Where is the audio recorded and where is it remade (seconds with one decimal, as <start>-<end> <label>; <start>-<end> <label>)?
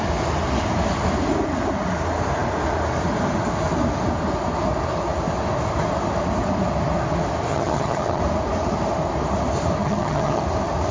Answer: 0.0-7.5 recorded; 7.5-8.2 remade; 8.2-9.8 recorded; 9.8-10.4 remade; 10.4-10.9 recorded